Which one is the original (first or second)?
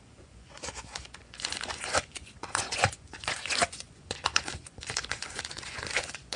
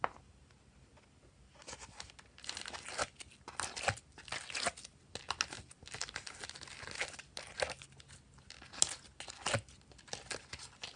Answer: second